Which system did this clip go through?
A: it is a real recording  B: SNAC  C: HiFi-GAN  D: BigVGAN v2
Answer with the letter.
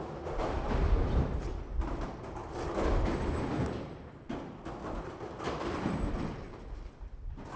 A